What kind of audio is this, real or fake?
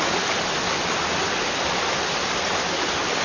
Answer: real